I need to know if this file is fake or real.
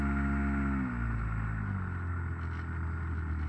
real